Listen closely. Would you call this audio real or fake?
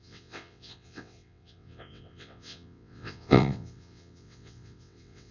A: fake